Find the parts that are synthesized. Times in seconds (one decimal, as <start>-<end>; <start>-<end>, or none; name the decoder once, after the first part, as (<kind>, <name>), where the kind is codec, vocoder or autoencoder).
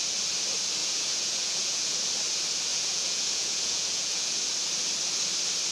0.8-2.0 (vocoder, Vocos); 2.7-4.4